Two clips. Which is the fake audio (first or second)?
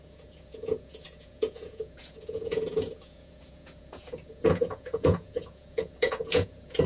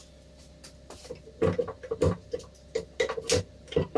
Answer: first